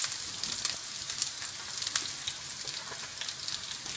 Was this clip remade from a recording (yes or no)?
no